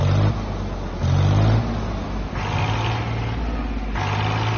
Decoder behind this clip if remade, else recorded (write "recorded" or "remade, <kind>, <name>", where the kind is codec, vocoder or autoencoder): recorded